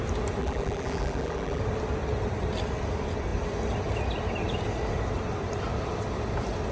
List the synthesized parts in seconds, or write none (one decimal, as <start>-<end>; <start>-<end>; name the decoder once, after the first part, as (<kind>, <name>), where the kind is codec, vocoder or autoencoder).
0.4-1.6 (vocoder, BigVGAN v2)